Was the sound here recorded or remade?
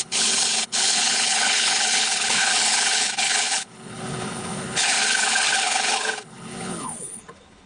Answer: remade